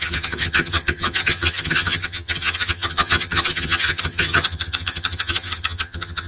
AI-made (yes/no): yes